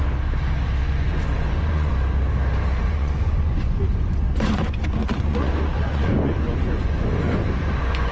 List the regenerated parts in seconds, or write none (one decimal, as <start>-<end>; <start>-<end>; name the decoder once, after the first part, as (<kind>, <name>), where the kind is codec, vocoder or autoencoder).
0.8-1.9 (vocoder, Vocos); 2.8-8.1